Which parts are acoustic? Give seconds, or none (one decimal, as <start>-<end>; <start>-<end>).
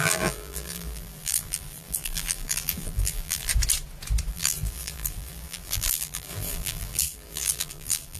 3.5-4.3